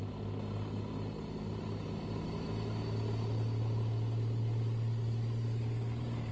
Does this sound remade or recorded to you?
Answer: recorded